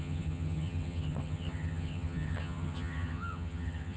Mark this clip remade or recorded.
remade